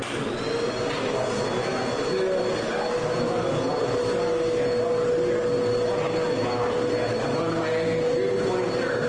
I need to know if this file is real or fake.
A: real